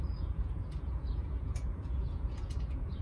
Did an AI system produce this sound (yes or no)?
yes